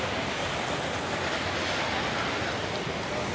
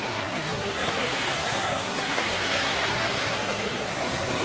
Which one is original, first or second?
first